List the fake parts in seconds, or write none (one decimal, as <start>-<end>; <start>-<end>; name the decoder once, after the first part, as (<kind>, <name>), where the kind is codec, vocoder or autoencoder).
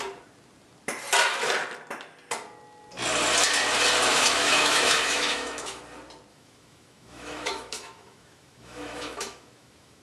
4.1-5.8 (autoencoder, DAC-VAE); 6.3-10.0